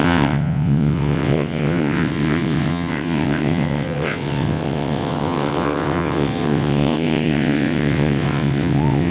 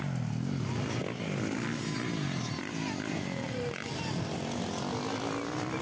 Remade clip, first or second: first